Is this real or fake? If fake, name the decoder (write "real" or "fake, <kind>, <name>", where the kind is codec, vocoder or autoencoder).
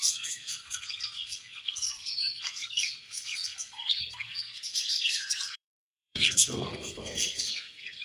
fake, codec, SNAC